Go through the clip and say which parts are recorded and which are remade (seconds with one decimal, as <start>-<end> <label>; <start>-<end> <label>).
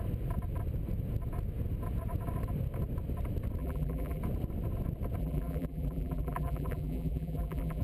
0.0-3.6 recorded; 3.6-4.2 remade; 4.2-5.2 recorded; 5.2-7.8 remade